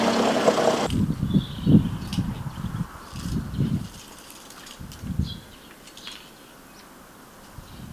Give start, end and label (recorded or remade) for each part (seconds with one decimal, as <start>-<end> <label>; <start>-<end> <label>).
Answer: 0.0-2.1 recorded; 2.1-5.8 remade; 5.8-7.9 recorded